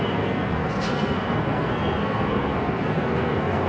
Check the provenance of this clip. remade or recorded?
remade